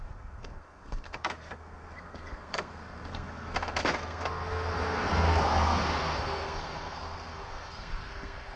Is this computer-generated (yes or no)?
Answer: yes